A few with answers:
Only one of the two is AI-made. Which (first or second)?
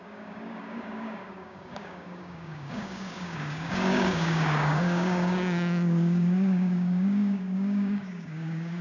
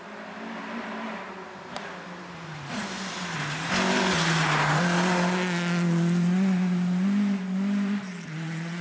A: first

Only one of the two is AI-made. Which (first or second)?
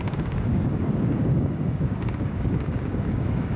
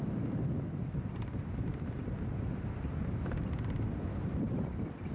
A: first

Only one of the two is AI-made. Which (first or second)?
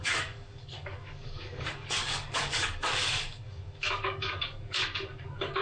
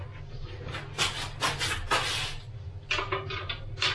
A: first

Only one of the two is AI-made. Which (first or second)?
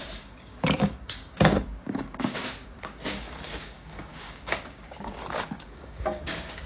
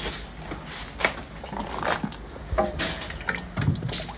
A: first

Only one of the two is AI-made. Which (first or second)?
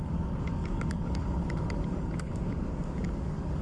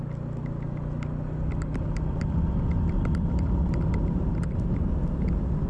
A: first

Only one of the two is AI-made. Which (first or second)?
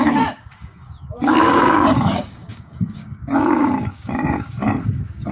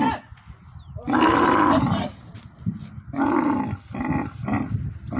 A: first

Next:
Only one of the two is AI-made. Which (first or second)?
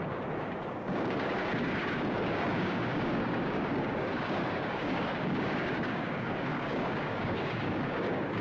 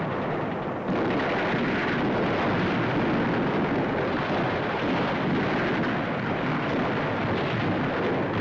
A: first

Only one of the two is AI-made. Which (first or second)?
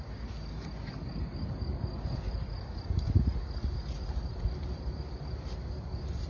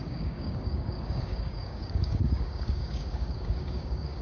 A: second